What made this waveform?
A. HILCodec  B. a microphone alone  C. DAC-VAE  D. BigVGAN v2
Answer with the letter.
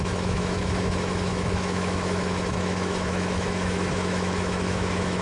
C